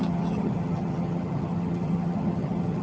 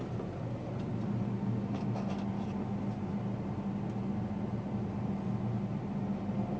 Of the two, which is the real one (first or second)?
second